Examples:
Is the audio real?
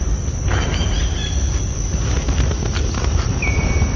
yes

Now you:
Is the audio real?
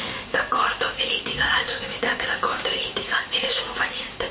no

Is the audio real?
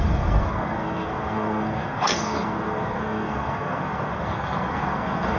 no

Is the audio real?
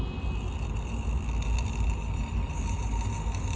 yes